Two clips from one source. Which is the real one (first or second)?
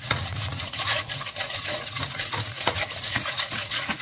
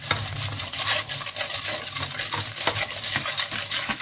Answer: second